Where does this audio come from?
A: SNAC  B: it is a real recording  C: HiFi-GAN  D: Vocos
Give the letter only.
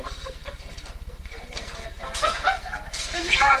A